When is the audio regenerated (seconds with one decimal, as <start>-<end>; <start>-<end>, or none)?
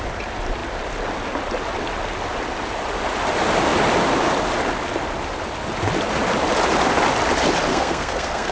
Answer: 7.7-8.5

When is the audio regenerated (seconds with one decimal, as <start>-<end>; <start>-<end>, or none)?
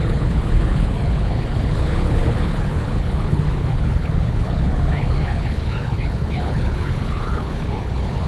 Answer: 0.0-8.3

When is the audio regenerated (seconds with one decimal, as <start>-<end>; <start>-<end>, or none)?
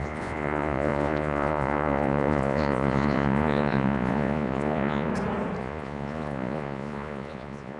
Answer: 0.0-5.1; 5.6-7.8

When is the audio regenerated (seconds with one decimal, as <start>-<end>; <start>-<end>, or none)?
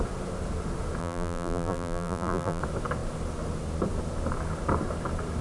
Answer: 1.0-2.6